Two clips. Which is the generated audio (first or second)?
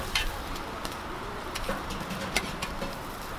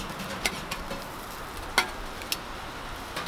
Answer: first